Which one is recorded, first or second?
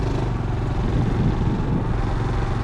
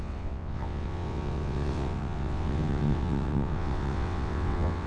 first